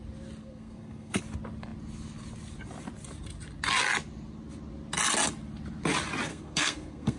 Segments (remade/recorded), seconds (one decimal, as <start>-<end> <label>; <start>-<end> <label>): 0.0-0.4 recorded; 0.4-1.2 remade; 1.2-6.3 recorded; 6.3-7.2 remade